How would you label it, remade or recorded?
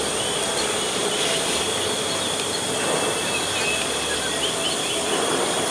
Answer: recorded